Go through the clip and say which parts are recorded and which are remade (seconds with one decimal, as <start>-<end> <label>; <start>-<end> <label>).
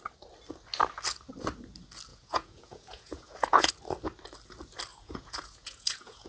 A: 0.0-2.1 recorded; 2.1-3.7 remade; 3.7-4.9 recorded; 4.9-6.3 remade